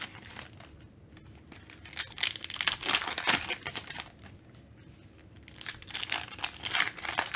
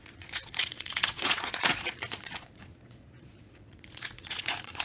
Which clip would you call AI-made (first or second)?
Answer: second